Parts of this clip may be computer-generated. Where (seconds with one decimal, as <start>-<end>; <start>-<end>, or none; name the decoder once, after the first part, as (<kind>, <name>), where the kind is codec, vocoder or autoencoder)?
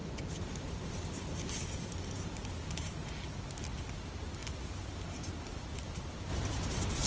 none